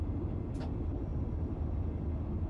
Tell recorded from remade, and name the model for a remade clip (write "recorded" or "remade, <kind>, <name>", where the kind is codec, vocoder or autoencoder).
recorded